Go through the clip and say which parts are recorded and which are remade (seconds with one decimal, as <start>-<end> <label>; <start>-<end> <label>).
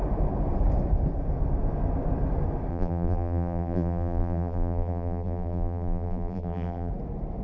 0.0-2.7 recorded; 2.7-6.9 remade; 6.9-7.4 recorded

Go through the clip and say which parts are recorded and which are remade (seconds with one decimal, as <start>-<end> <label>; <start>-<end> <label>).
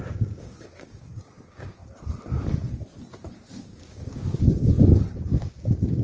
0.0-1.8 remade; 1.8-3.5 recorded; 3.5-4.7 remade; 4.7-5.4 recorded; 5.4-6.0 remade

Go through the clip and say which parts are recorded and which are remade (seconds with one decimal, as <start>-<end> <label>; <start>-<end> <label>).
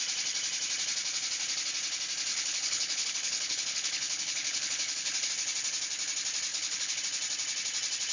0.0-2.3 recorded; 2.3-5.3 remade; 5.3-6.5 recorded; 6.5-7.0 remade; 7.0-8.1 recorded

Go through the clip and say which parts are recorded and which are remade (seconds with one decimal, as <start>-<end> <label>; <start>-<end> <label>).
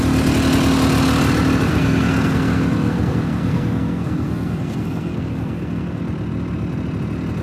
0.0-1.7 recorded; 1.7-6.0 remade; 6.0-7.4 recorded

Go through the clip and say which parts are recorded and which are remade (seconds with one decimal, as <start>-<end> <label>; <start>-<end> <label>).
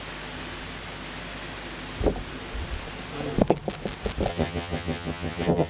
0.0-4.3 recorded; 4.3-5.7 remade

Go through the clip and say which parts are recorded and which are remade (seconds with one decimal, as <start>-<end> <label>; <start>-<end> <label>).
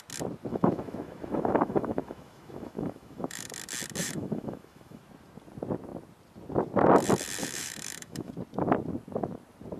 0.0-0.5 recorded; 0.5-3.5 remade; 3.5-4.0 recorded; 4.0-5.0 remade; 5.0-7.4 recorded; 7.4-8.3 remade; 8.3-9.8 recorded